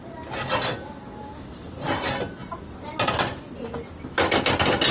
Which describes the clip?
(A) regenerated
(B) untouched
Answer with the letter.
B